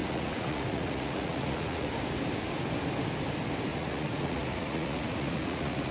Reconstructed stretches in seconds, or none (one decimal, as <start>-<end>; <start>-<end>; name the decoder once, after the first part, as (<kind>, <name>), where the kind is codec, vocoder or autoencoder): 0.0-1.9 (vocoder, Vocos); 3.7-5.9